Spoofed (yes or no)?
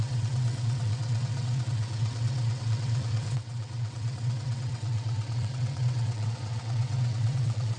yes